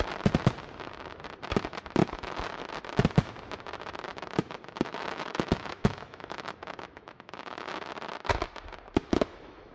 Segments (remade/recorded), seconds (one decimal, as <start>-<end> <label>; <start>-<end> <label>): 0.0-2.0 recorded; 2.0-2.6 remade; 2.6-4.1 recorded; 4.1-7.7 remade; 7.7-9.0 recorded; 9.0-9.7 remade